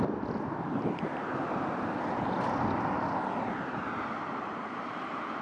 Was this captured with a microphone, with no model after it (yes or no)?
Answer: no